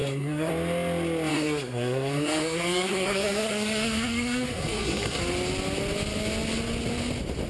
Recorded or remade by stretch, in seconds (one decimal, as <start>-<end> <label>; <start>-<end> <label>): 0.0-0.5 remade; 0.5-1.3 recorded; 1.3-5.2 remade; 5.2-7.5 recorded